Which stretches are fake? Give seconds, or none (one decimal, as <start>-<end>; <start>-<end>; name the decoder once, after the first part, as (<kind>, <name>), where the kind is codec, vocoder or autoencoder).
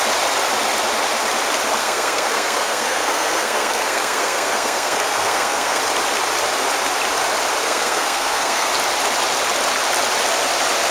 1.8-5.8 (codec, SNAC); 7.6-8.7